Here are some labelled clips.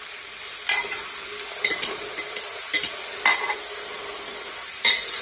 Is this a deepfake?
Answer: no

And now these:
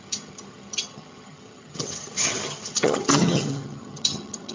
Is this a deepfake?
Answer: yes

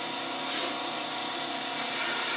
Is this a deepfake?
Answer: no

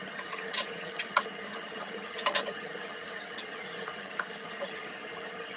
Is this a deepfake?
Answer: yes